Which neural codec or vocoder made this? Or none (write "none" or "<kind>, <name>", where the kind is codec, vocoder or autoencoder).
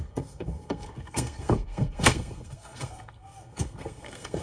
codec, SNAC